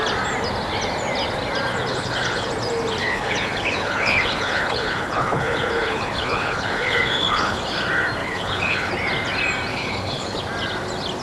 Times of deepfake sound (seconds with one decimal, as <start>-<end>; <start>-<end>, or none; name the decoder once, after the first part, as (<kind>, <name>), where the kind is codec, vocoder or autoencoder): 1.9-2.5 (codec, HILCodec); 3.0-7.6; 8.2-8.9; 9.7-10.4